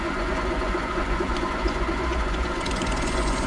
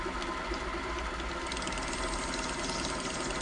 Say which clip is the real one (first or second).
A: second